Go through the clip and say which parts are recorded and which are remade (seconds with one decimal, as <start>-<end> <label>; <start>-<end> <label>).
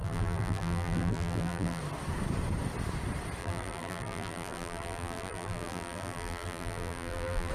0.0-1.8 remade; 1.8-3.4 recorded; 3.4-7.5 remade